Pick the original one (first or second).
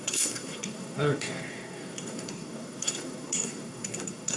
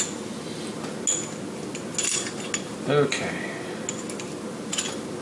second